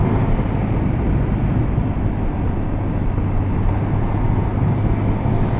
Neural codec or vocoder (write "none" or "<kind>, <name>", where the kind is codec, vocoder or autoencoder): none